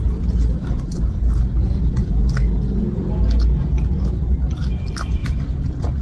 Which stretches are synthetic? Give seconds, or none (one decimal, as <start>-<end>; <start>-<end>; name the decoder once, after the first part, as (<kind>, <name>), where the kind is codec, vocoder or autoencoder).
none